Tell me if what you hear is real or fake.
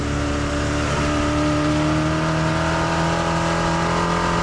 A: real